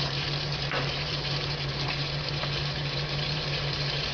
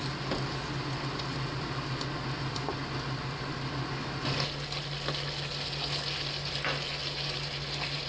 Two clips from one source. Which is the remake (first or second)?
first